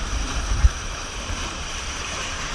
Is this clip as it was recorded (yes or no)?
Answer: no